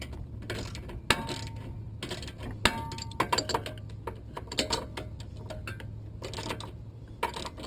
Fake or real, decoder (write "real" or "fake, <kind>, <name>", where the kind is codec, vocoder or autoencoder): real